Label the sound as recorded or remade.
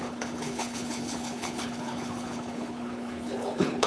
remade